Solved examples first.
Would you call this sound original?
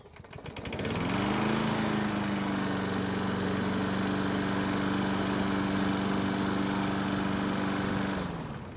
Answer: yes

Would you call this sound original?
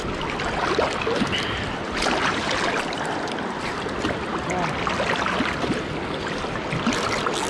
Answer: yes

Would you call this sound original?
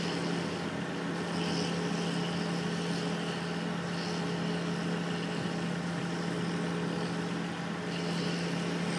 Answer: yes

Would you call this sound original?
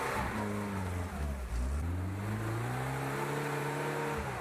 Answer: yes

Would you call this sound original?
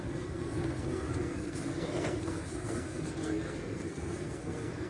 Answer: no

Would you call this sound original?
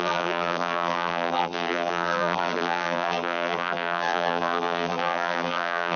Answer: no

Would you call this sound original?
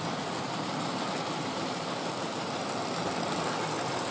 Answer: yes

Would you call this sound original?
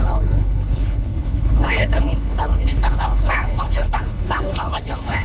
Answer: no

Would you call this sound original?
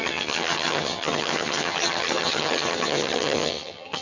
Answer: no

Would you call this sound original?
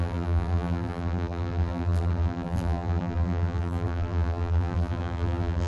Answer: no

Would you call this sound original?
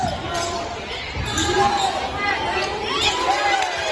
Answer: yes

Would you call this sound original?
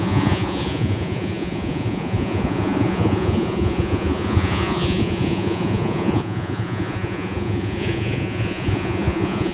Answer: no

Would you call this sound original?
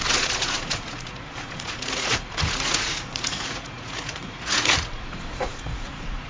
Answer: no